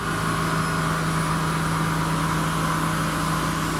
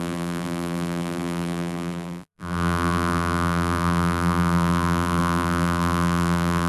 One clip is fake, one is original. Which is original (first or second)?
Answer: first